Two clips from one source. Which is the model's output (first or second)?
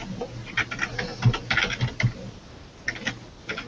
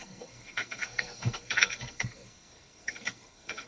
second